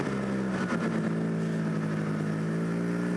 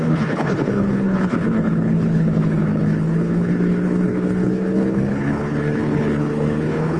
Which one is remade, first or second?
second